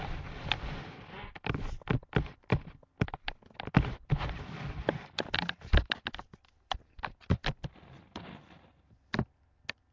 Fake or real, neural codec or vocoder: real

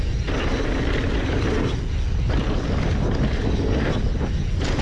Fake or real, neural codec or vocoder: real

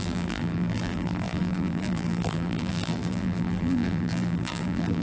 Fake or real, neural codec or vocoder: fake, vocoder, BigVGAN v2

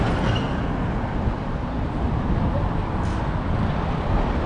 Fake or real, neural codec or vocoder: real